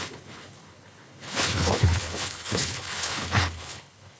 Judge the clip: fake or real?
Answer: fake